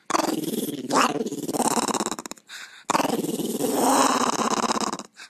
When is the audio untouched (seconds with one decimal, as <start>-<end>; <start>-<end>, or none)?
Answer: 0.0-5.3